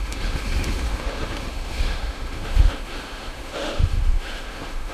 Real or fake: fake